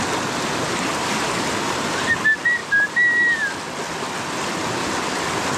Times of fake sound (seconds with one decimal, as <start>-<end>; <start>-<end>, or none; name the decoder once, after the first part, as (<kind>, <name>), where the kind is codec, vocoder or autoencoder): none